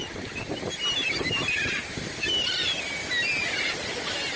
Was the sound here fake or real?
real